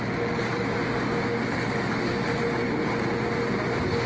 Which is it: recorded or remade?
recorded